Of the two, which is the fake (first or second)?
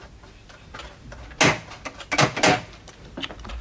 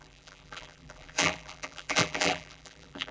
second